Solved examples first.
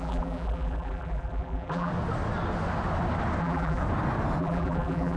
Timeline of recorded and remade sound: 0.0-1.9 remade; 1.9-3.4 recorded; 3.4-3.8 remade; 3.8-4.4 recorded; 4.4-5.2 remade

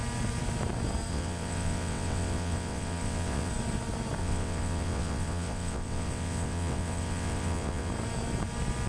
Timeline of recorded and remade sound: 0.0-1.1 recorded; 1.1-3.5 remade; 3.5-4.2 recorded; 4.2-7.9 remade; 7.9-8.9 recorded